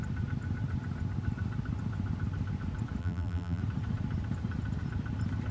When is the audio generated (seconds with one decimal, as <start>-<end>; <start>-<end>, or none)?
3.0-3.6